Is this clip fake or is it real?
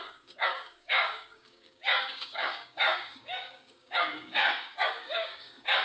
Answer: fake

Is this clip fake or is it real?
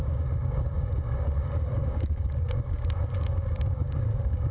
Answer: fake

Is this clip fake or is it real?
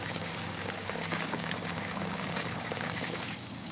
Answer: fake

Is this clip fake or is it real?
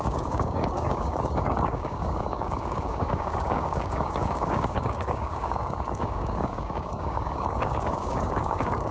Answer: fake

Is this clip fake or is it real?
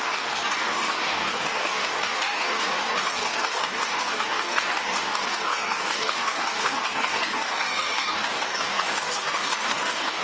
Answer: fake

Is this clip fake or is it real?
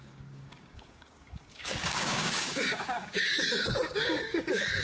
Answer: fake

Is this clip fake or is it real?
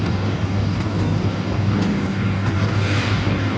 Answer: fake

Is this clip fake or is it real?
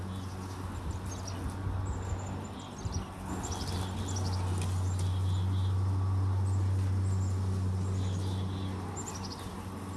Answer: real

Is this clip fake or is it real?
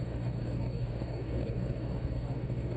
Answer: fake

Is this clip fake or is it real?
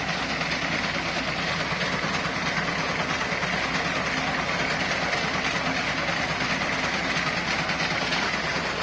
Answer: real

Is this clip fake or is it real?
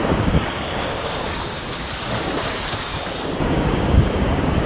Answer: fake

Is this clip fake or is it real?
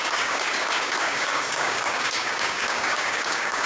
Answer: fake